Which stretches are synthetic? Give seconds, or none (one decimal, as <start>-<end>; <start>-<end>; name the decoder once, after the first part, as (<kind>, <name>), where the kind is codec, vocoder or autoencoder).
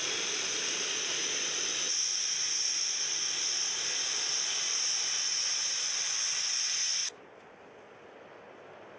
none